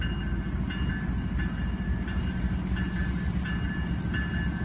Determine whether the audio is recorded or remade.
recorded